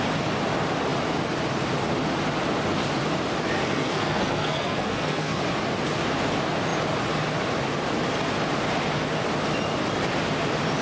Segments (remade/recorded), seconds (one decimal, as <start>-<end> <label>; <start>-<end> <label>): 0.0-3.6 recorded; 3.6-5.4 remade; 5.4-10.8 recorded